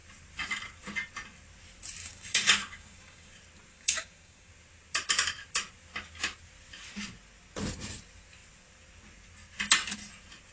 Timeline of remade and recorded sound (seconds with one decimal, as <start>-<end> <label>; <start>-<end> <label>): 0.0-2.0 recorded; 2.0-3.3 remade; 3.3-3.7 recorded; 3.7-4.5 remade; 4.5-10.5 recorded

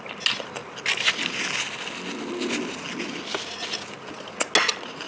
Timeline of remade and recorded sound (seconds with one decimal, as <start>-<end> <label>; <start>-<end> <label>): 0.0-5.1 recorded

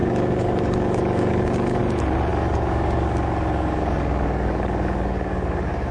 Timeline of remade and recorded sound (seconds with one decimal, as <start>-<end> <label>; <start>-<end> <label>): 0.0-1.8 remade; 1.8-2.3 recorded; 2.3-5.9 remade

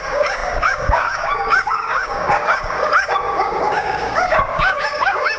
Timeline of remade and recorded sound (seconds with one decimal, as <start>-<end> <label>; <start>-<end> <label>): 0.0-5.4 remade

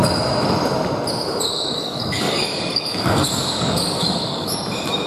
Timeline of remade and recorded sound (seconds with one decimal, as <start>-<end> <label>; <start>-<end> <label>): 0.0-1.5 recorded; 1.5-4.6 remade; 4.6-5.1 recorded

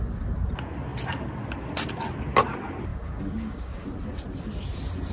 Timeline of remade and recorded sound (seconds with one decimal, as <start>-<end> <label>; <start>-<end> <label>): 0.0-2.9 recorded; 2.9-3.9 remade; 3.9-5.1 recorded

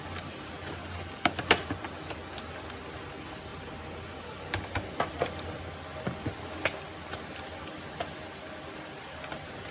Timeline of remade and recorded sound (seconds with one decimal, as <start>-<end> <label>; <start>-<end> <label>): 0.0-0.8 recorded; 0.8-1.3 remade; 1.3-9.7 recorded

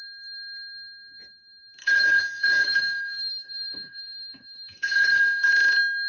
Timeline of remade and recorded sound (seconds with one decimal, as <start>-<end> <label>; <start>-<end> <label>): 0.0-1.8 recorded; 1.8-5.5 remade; 5.5-6.1 recorded